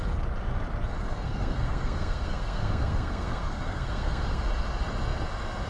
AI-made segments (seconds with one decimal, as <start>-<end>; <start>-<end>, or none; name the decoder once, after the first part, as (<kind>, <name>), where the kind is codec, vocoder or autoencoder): 1.0-4.4 (codec, SNAC)